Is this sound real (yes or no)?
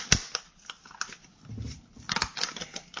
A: yes